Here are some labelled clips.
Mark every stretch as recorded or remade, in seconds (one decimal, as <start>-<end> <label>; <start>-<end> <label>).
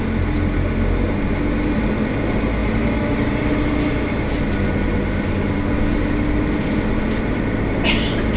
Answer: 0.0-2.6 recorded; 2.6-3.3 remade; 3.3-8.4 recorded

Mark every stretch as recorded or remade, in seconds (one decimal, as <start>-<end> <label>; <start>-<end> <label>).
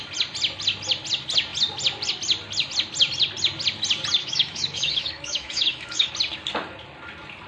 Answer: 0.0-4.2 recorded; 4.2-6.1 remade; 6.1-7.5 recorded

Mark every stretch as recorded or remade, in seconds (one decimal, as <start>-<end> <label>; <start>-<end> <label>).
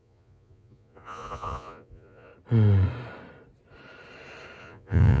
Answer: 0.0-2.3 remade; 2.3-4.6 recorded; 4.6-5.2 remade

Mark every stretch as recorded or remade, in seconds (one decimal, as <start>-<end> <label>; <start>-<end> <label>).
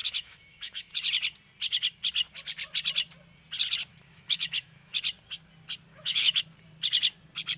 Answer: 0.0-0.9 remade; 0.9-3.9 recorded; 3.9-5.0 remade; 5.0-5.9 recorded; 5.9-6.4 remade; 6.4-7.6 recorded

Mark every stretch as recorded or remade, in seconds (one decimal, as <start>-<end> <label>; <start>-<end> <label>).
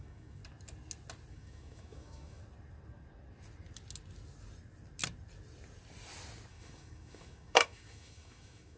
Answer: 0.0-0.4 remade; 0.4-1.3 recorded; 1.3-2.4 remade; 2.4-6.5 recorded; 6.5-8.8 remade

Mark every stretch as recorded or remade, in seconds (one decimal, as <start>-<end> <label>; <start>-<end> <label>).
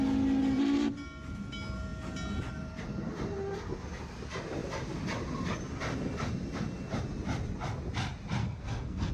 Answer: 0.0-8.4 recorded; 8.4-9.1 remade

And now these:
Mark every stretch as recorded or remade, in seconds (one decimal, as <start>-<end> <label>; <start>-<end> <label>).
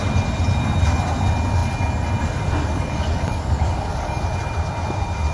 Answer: 0.0-2.6 recorded; 2.6-4.2 remade; 4.2-5.3 recorded